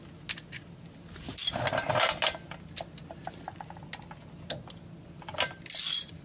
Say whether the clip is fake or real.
real